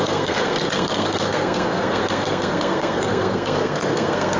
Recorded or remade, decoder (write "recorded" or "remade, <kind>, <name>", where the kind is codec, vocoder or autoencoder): remade, codec, SNAC